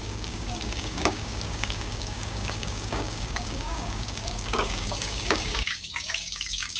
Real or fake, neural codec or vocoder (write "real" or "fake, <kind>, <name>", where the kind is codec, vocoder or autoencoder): fake, codec, DAC